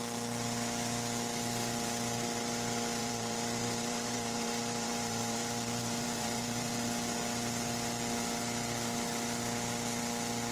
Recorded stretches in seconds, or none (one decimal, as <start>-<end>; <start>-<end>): 0.0-3.0; 6.7-10.5